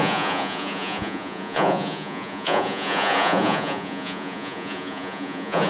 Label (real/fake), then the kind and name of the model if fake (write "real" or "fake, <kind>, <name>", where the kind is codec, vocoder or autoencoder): fake, vocoder, Vocos